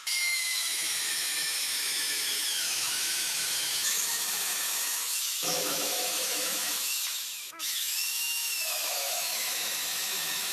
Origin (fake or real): fake